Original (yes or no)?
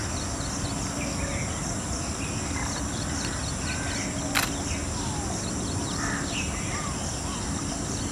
yes